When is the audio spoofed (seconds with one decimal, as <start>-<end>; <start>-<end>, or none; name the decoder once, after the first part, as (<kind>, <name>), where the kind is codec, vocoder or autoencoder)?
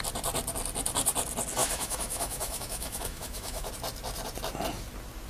1.6-3.7 (autoencoder, DAC-VAE)